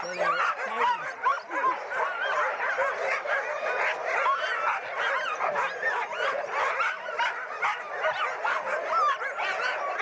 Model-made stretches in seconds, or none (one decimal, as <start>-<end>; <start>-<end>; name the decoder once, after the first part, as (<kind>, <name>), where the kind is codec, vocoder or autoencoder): none